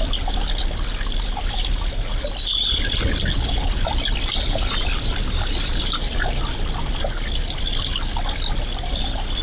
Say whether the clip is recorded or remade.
recorded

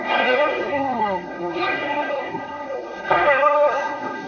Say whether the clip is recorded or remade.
remade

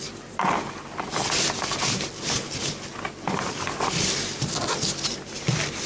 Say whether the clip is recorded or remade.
recorded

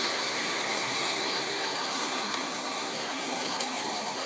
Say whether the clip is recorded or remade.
remade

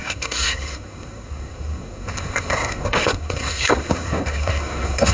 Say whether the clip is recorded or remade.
remade